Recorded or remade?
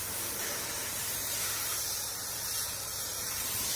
remade